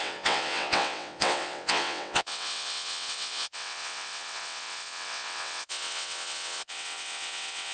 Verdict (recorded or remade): remade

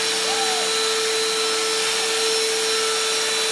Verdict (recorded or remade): recorded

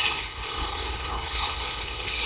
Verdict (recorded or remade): remade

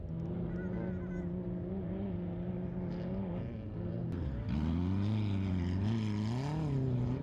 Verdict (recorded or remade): recorded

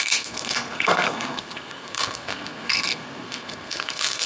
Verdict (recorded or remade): remade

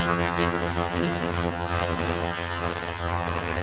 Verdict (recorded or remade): remade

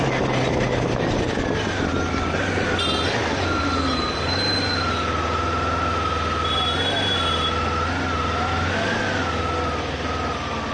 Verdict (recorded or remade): recorded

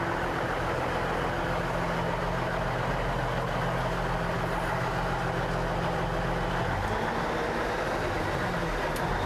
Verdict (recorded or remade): recorded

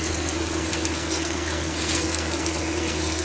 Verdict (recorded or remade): remade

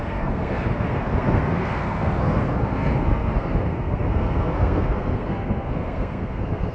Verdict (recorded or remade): remade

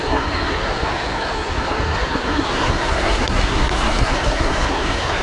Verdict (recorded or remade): remade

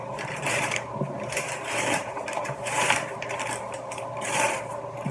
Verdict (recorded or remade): remade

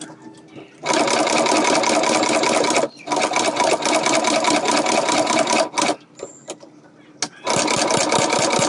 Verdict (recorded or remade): recorded